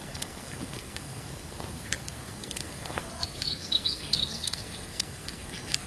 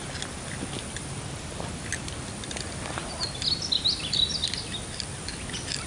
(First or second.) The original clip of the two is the second